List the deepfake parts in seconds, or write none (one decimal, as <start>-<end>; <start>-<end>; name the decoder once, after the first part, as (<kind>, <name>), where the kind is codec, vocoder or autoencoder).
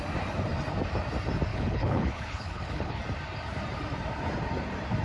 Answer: 1.5-3.0 (codec, HILCodec)